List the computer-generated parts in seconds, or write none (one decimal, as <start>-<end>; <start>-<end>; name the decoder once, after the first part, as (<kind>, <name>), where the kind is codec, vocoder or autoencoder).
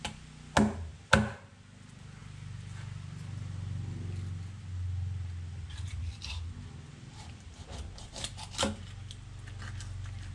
none